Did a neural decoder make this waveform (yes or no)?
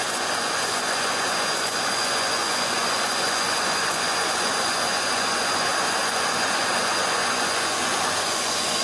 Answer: yes